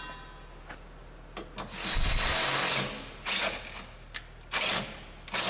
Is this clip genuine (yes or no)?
yes